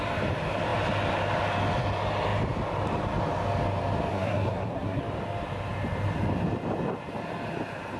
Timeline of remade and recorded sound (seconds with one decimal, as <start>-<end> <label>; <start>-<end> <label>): 0.0-4.1 recorded; 4.1-5.0 remade; 5.0-8.0 recorded